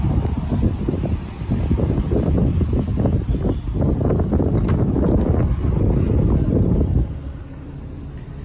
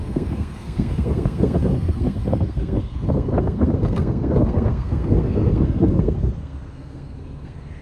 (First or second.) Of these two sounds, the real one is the first